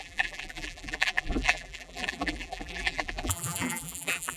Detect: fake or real fake